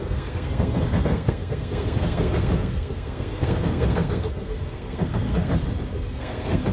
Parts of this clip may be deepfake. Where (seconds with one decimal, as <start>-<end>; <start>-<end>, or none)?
0.0-5.5; 6.1-6.7

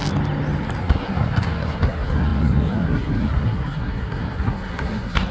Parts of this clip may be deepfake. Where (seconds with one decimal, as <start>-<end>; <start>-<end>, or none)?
0.8-5.3

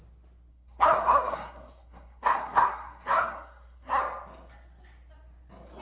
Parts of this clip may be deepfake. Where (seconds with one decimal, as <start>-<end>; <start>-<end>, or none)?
0.5-4.0

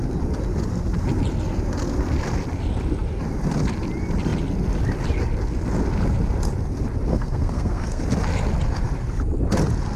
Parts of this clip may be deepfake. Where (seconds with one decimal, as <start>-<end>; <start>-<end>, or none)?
7.1-8.0